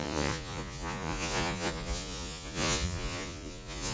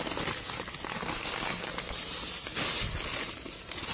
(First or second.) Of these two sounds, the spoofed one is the first